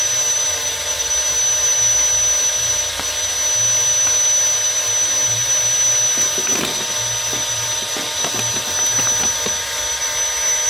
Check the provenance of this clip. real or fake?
real